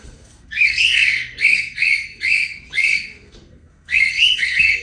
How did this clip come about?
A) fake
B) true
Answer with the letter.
A